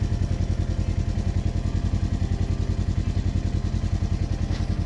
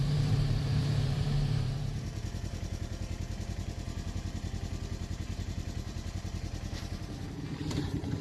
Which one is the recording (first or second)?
first